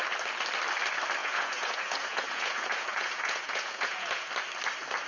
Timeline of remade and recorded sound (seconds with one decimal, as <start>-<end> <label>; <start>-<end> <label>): 0.0-1.2 recorded; 1.2-4.3 remade; 4.3-5.1 recorded